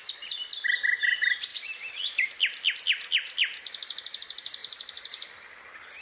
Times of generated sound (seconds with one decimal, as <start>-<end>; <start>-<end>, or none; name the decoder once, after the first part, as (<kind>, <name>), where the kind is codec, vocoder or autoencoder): 1.5-2.3 (vocoder, BigVGAN v2)